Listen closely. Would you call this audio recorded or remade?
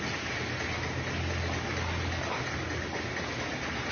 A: recorded